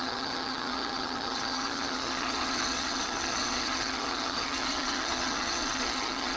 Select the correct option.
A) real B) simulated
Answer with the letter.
B